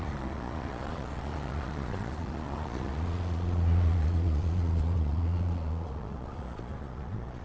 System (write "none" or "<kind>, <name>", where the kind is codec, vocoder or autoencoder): vocoder, Vocos